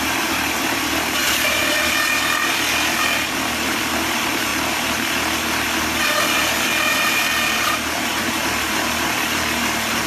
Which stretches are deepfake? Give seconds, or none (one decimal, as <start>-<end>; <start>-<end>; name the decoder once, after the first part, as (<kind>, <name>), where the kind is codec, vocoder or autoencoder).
0.0-1.6 (vocoder, BigVGAN v2); 3.8-4.5; 8.2-10.1